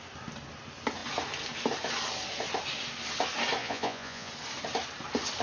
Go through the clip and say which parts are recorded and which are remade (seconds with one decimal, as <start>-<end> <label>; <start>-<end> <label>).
0.0-3.6 recorded; 3.6-4.3 remade; 4.3-5.4 recorded